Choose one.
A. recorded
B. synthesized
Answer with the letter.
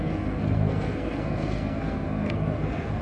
B